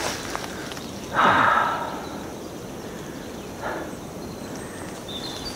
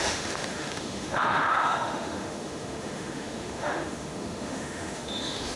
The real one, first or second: first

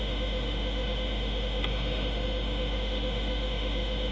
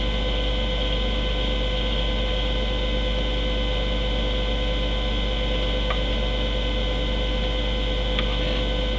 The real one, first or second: second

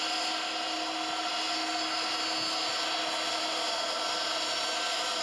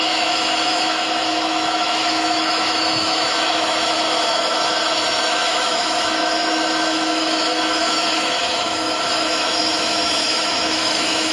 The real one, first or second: first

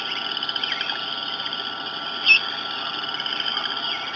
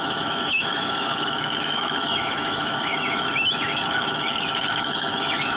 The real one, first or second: first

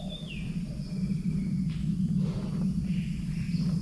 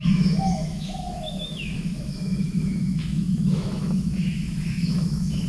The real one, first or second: first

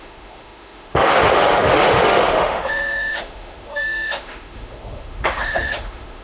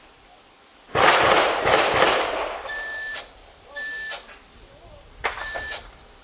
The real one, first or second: second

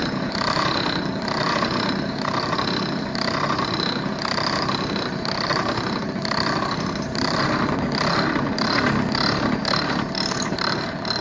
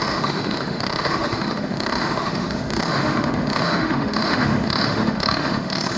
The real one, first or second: first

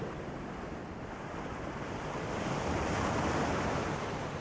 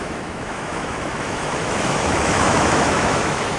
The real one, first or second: first